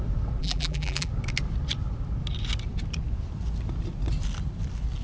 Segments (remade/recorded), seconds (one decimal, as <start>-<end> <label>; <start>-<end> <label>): 0.0-0.4 recorded; 0.4-1.1 remade; 1.1-5.0 recorded